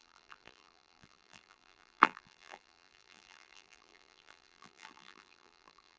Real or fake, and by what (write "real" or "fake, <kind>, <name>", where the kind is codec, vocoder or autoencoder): fake, vocoder, BigVGAN v2